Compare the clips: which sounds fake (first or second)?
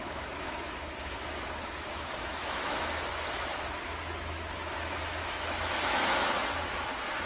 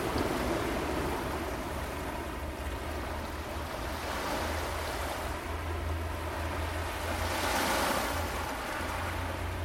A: first